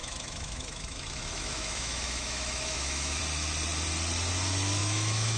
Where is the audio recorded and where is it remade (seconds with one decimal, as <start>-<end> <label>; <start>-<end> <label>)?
0.0-3.2 remade; 3.2-4.8 recorded; 4.8-5.4 remade